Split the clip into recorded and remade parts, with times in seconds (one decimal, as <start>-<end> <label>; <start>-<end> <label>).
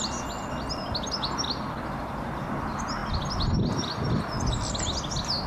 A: 0.0-5.5 recorded